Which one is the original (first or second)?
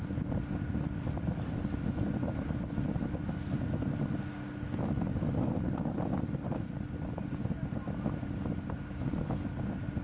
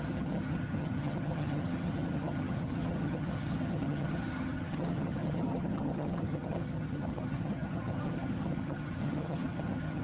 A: first